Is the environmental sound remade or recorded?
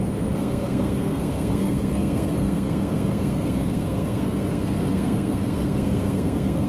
remade